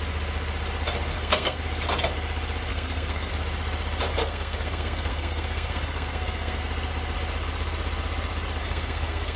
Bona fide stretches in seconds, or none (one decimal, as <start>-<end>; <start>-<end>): 0.0-1.1; 1.6-2.7; 3.3-4.1; 6.6-8.6